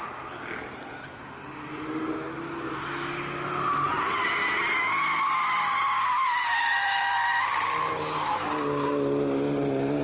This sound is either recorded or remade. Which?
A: recorded